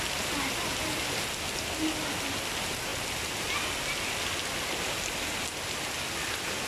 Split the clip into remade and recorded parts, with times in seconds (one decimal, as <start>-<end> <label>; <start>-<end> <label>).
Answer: 0.0-6.7 recorded